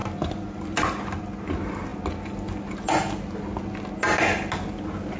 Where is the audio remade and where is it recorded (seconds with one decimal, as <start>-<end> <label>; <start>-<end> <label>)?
0.0-5.2 recorded